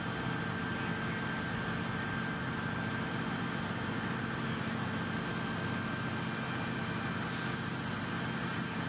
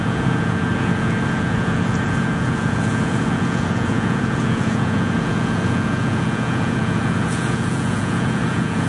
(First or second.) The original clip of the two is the first